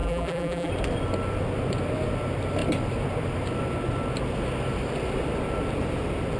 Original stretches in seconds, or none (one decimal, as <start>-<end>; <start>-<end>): 0.7-6.4